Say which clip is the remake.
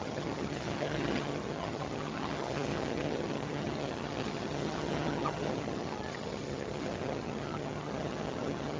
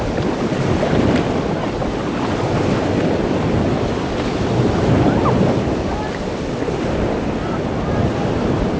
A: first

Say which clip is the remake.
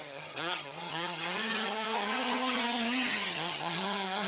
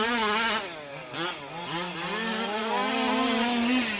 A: first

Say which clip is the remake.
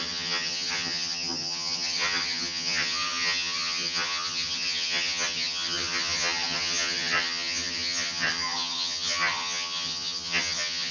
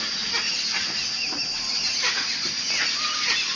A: first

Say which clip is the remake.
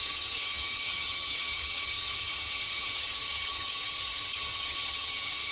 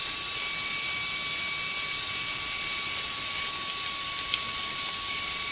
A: first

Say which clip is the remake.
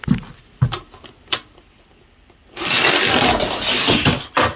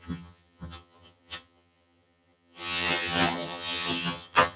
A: second